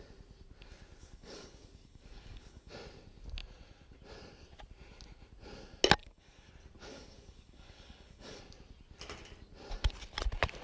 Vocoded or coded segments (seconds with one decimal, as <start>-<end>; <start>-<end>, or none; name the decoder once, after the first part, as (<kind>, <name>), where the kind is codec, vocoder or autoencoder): 1.0-2.7 (codec, DAC); 6.0-6.5; 6.9-8.4